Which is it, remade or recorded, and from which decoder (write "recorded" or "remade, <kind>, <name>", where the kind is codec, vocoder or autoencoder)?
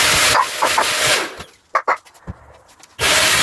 recorded